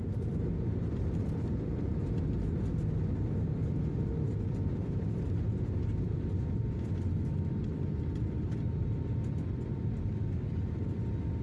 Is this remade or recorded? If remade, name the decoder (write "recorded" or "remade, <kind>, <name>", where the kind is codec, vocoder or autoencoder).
recorded